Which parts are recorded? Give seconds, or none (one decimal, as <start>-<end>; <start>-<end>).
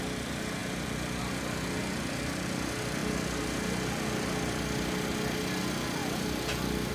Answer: 0.0-6.9